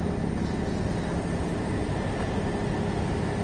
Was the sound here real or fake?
real